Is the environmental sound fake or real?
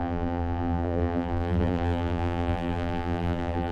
fake